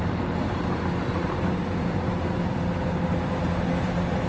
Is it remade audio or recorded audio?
recorded